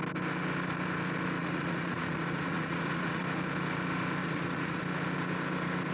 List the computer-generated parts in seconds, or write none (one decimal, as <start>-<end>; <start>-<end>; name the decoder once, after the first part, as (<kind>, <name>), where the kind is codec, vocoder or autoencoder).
1.4-3.2 (vocoder, Vocos); 4.2-4.8